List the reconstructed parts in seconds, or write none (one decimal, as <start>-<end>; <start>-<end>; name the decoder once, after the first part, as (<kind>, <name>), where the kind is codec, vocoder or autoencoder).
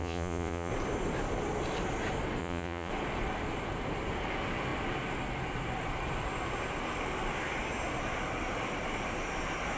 0.0-0.7 (vocoder, Vocos); 2.4-2.9